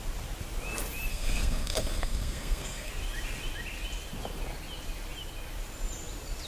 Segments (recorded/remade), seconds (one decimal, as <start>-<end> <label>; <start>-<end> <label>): 0.0-1.1 recorded; 1.1-2.9 remade; 2.9-6.5 recorded